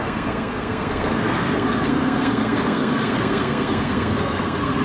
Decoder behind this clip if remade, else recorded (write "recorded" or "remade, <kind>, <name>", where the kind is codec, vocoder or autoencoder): remade, codec, SNAC